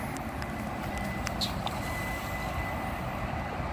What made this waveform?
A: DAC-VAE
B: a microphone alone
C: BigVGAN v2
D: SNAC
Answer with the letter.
B